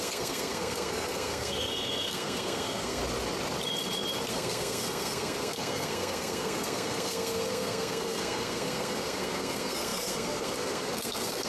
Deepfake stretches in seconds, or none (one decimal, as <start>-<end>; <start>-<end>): 0.0-3.0; 4.3-11.5

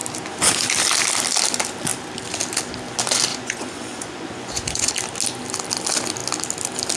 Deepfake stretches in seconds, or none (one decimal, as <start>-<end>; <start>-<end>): 3.3-4.9

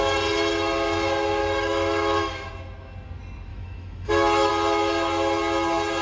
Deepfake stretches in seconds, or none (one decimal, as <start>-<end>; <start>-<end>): 1.4-2.5; 3.5-4.5

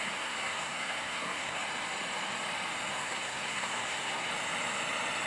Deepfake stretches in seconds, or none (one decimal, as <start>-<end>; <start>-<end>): 0.0-1.6; 2.9-4.3